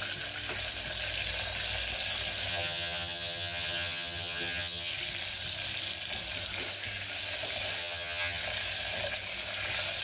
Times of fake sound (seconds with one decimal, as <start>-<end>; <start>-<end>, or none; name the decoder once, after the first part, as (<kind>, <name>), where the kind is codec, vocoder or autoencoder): 2.5-4.9 (vocoder, HiFi-GAN); 7.8-8.4